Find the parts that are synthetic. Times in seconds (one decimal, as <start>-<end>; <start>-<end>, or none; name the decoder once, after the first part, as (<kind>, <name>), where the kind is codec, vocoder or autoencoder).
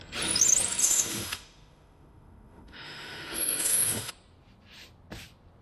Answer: 0.8-4.1 (autoencoder, DAC-VAE)